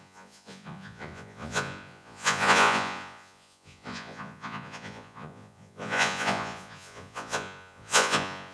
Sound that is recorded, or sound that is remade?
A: remade